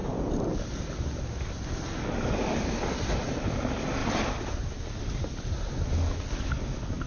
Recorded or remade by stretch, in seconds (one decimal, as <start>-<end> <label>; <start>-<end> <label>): 0.0-7.1 recorded